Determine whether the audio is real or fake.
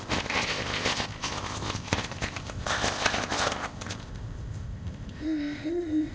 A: fake